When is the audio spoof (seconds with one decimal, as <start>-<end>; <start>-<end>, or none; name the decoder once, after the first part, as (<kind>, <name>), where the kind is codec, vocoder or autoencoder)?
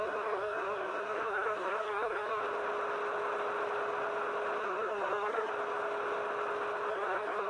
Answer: 0.0-2.4 (codec, SNAC); 4.6-5.5; 6.9-7.5